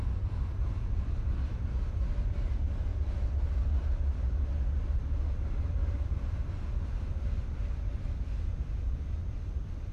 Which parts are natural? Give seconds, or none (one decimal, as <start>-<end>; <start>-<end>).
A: 0.0-5.8; 6.5-9.9